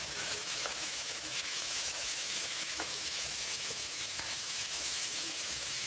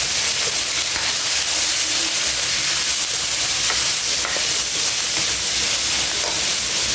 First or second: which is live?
second